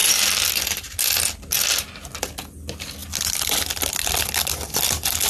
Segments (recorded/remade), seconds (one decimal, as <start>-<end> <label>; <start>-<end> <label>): 0.0-5.3 recorded